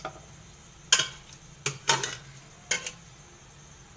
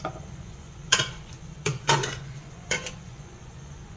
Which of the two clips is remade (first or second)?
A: second